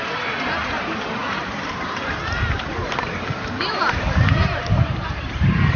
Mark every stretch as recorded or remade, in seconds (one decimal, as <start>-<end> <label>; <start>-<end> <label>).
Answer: 0.0-5.8 remade